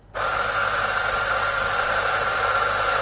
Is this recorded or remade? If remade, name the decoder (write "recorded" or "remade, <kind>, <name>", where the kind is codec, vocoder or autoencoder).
recorded